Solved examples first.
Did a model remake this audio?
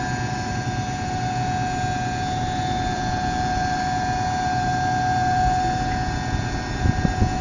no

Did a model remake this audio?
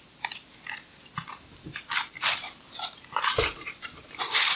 yes